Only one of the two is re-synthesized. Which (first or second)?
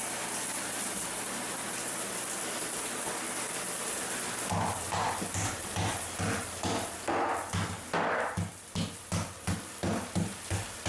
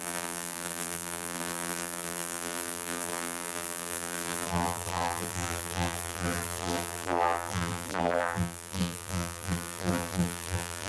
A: second